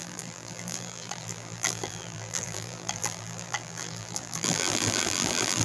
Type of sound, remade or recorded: remade